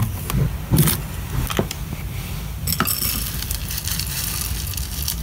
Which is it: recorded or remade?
recorded